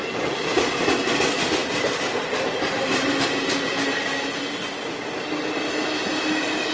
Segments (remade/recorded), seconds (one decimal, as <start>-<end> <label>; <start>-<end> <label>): 0.0-6.7 recorded